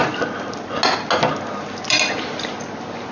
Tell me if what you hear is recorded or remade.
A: recorded